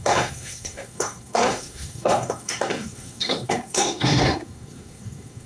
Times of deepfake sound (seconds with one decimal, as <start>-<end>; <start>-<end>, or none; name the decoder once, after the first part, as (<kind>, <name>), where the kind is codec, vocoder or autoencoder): 0.0-5.5 (codec, SNAC)